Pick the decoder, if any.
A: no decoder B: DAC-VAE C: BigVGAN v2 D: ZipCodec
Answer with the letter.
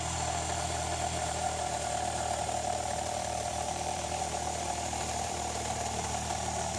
C